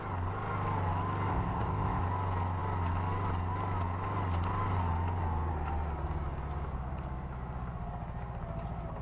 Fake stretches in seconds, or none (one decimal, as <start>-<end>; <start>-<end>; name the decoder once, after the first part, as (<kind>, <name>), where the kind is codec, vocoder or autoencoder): 1.3-2.0 (codec, ZipCodec)